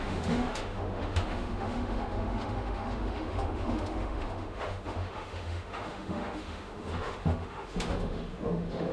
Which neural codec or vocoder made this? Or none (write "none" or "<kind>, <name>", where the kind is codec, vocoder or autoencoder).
autoencoder, DAC-VAE